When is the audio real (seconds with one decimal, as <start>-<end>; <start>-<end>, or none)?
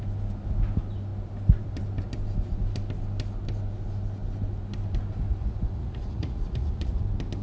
0.0-5.4; 7.0-7.4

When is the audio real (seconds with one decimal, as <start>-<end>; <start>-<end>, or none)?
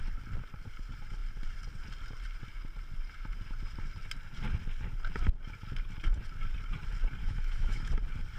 0.0-7.2; 7.9-8.4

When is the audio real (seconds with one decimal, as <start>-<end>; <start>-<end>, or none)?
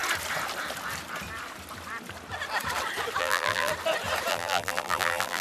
0.0-3.2; 3.7-4.3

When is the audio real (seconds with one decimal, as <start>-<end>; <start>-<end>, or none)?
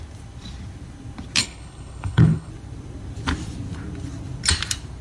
0.0-1.4; 2.5-5.0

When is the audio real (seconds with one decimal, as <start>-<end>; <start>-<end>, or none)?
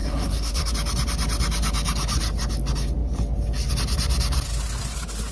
0.7-5.3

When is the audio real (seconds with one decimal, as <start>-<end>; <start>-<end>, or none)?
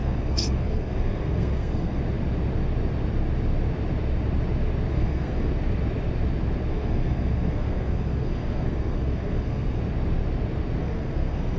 2.0-4.9; 5.5-6.7; 9.8-10.8